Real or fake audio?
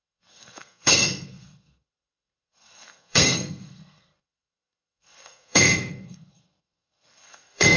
fake